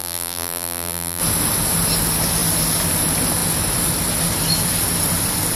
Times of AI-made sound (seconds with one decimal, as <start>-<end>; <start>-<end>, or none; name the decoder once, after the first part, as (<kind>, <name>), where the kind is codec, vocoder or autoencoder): 0.0-1.2 (vocoder, BigVGAN v2)